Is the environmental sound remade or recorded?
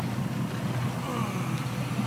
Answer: recorded